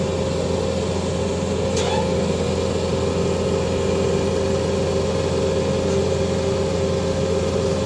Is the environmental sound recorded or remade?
recorded